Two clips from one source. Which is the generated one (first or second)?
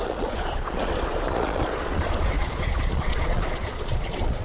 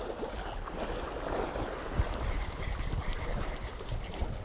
first